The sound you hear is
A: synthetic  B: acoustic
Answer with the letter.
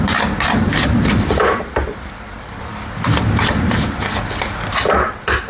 A